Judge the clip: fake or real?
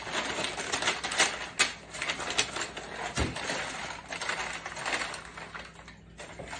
real